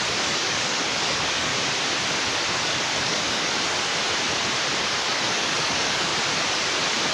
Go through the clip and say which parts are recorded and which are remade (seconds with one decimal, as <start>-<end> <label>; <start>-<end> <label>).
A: 0.0-1.5 remade; 1.5-2.6 recorded; 2.6-3.9 remade; 3.9-4.8 recorded; 4.8-6.1 remade; 6.1-7.1 recorded